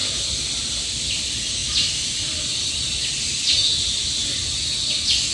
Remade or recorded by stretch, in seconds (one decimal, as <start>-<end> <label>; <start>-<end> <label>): 0.0-5.3 recorded